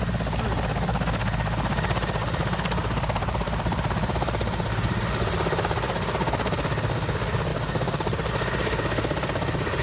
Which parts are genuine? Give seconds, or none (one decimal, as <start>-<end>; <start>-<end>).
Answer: 0.0-2.8; 5.0-7.5; 8.3-9.8